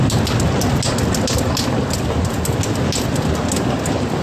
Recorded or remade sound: recorded